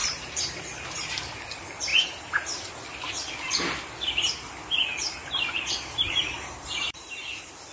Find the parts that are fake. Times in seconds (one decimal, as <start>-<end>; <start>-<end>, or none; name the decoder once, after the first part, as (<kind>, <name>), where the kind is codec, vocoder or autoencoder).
0.0-0.6 (vocoder, BigVGAN v2); 1.9-2.7; 5.9-7.2